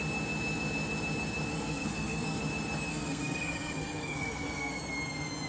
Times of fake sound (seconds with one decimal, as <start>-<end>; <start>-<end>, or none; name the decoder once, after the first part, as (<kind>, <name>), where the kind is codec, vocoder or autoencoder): 1.5-2.4 (codec, SNAC); 2.9-4.8